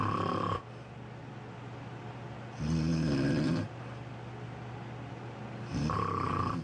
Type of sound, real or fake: real